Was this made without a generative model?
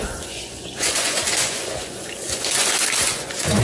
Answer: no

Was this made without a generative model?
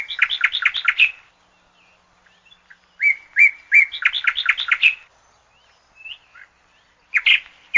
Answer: yes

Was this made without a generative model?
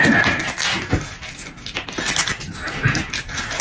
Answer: yes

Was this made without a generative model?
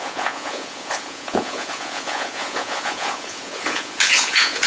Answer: no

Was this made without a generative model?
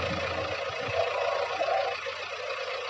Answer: yes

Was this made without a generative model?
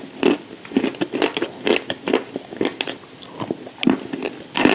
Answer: yes